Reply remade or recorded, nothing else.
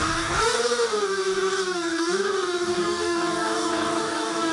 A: remade